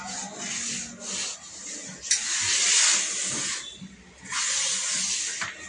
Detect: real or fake real